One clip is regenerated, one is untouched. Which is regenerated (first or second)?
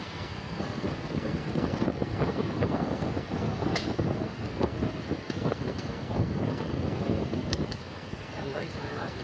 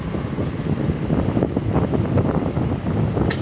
first